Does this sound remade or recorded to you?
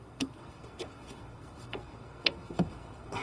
remade